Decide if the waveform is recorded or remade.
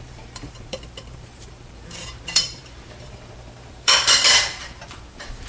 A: remade